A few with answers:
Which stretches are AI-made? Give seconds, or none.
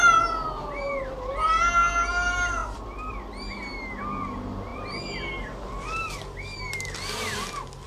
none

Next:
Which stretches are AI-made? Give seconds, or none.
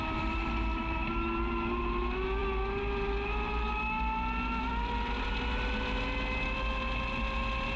none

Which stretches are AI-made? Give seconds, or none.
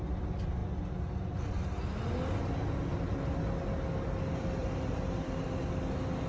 4.6-5.6 (vocoder, BigVGAN v2)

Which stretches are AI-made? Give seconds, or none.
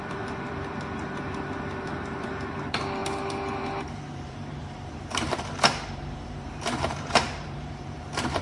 0.0-3.0 (vocoder, BigVGAN v2); 3.6-8.4